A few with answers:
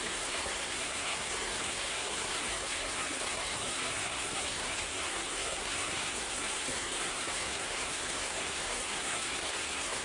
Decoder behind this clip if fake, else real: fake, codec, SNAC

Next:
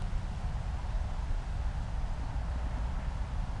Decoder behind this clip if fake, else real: real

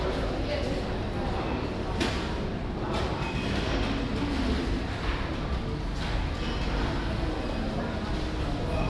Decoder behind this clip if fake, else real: real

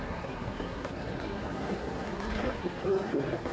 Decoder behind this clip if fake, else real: fake, codec, SNAC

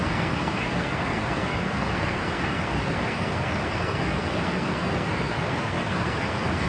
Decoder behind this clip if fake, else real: fake, codec, SNAC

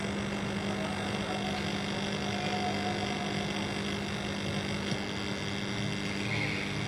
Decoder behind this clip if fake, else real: real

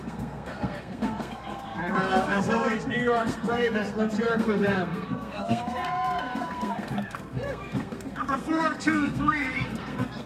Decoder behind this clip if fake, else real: fake, codec, SNAC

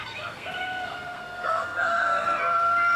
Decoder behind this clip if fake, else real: fake, codec, SNAC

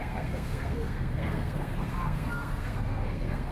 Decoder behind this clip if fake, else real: fake, codec, SNAC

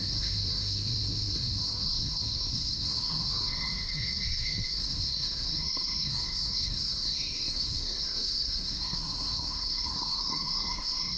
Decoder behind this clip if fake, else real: fake, codec, SNAC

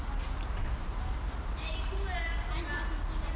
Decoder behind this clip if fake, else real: real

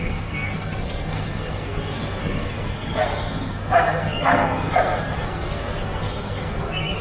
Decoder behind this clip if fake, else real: fake, codec, SNAC